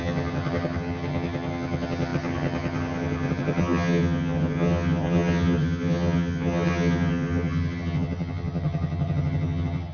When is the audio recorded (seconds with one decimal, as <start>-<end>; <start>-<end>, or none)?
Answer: none